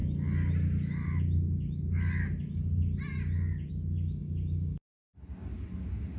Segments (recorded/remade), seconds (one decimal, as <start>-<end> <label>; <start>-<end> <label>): 0.0-6.2 recorded